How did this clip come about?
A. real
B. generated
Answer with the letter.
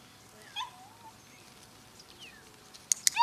A